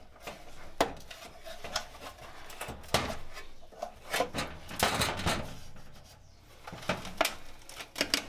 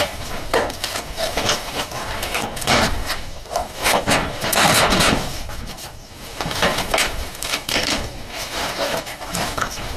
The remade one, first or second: second